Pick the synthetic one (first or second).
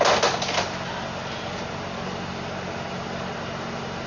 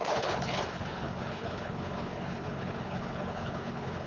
second